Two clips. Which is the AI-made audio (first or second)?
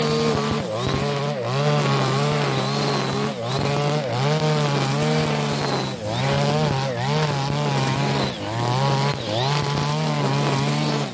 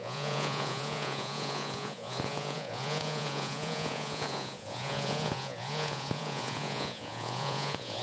second